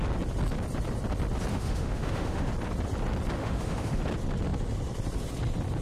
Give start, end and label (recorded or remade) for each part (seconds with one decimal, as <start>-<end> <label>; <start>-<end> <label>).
0.0-1.5 recorded; 1.5-2.5 remade; 2.5-3.4 recorded; 3.4-4.0 remade; 4.0-5.8 recorded